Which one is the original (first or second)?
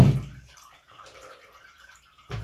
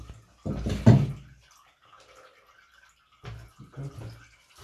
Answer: second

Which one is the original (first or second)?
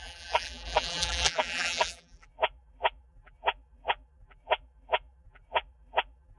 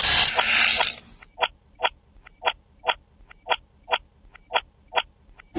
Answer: second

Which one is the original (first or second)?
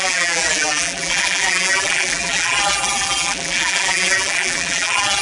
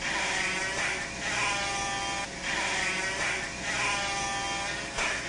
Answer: second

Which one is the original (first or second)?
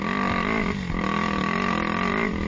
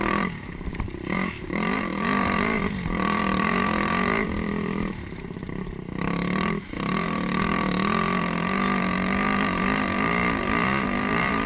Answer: first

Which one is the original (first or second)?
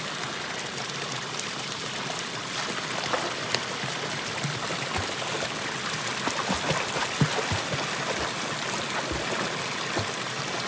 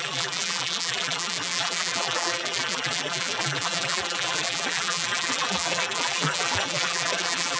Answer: first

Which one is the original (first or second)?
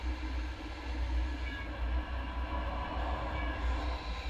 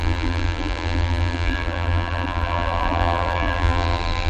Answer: first